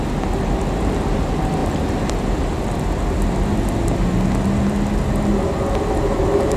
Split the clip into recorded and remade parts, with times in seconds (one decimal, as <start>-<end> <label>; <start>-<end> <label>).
0.0-6.6 recorded